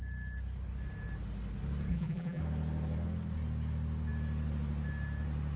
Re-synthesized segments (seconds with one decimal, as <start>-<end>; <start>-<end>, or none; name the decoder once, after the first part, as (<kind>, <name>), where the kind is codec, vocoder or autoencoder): 1.9-2.4 (vocoder, BigVGAN v2)